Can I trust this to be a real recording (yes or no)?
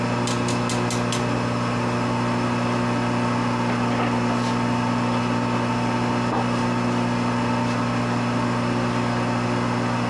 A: yes